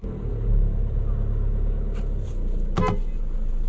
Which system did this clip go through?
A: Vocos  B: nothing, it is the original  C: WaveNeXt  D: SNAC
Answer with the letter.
B